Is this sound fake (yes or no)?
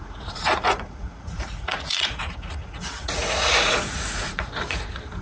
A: yes